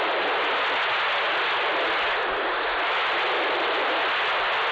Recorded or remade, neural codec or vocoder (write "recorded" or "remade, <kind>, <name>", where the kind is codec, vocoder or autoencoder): recorded